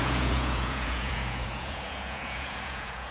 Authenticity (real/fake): fake